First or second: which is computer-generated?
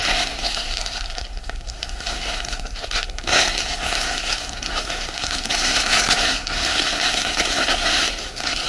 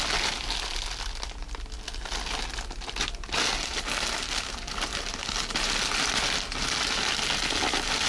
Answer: first